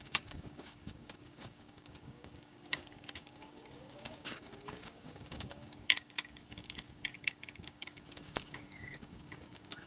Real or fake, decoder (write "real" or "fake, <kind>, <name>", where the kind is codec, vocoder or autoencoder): fake, codec, DAC